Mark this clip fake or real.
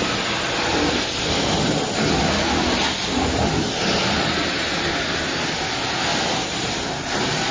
real